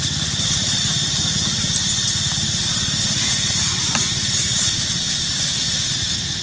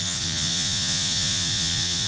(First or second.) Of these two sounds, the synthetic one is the second